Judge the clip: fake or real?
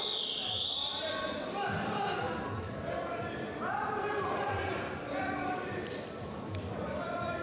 fake